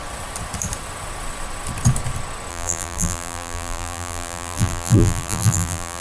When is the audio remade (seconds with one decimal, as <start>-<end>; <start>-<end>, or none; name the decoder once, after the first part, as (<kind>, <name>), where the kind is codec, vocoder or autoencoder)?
2.5-6.0 (vocoder, BigVGAN v2)